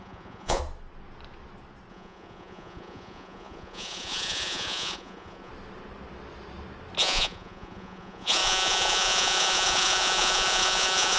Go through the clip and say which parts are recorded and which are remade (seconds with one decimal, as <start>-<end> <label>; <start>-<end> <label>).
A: 0.0-0.6 remade; 0.6-1.9 recorded; 1.9-5.5 remade; 5.5-7.0 recorded; 7.0-11.2 remade